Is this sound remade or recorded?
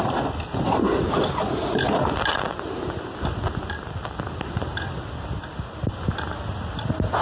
recorded